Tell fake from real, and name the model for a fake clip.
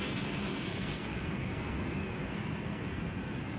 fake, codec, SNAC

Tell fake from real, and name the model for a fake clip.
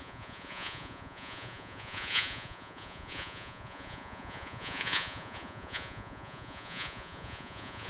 fake, vocoder, Vocos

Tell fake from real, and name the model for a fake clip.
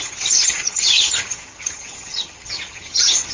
fake, vocoder, HiFi-GAN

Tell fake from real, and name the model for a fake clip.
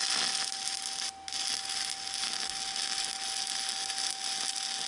real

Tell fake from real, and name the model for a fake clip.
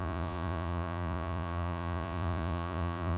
fake, vocoder, Vocos